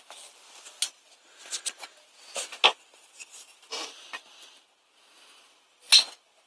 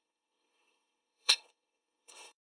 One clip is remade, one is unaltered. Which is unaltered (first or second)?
first